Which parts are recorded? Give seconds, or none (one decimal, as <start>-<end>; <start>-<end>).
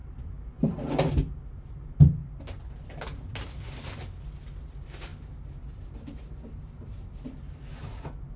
0.9-5.1; 6.9-8.4